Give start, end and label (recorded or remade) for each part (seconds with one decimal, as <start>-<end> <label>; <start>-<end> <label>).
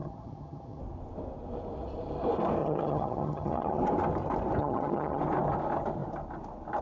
0.0-0.8 remade; 0.8-2.6 recorded; 2.6-3.8 remade; 3.8-4.6 recorded; 4.6-5.2 remade; 5.2-6.8 recorded